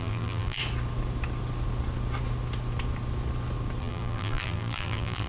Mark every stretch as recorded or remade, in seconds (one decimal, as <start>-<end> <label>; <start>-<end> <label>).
0.0-0.6 remade; 0.6-3.8 recorded; 3.8-5.3 remade